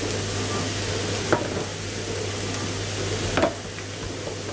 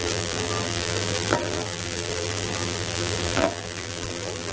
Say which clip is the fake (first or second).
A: second